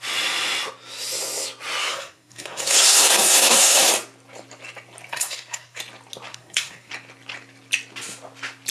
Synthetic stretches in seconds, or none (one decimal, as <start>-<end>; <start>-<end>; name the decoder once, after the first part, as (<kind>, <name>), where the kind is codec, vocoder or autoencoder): 1.8-3.9 (codec, SNAC); 5.1-5.8; 6.3-6.9